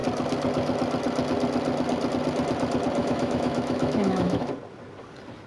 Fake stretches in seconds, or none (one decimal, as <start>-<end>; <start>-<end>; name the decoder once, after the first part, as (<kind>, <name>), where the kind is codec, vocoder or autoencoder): 3.0-4.5 (autoencoder, DAC-VAE)